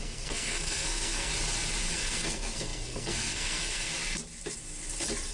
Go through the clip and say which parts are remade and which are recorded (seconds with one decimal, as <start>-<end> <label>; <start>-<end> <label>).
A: 0.0-1.3 remade; 1.3-1.9 recorded; 1.9-3.9 remade; 3.9-5.3 recorded